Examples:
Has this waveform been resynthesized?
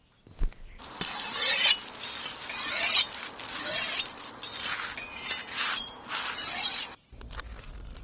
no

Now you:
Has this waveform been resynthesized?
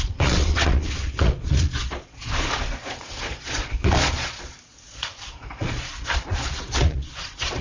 yes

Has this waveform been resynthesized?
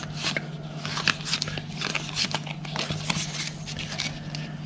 no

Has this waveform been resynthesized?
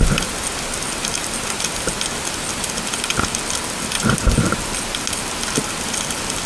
no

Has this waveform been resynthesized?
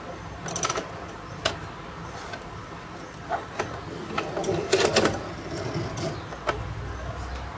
no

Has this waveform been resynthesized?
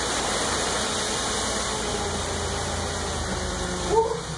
no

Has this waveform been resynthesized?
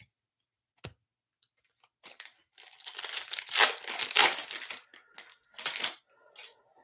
no